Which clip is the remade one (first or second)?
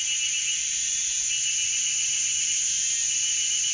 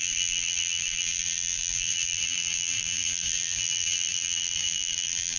second